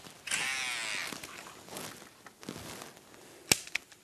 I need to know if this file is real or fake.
real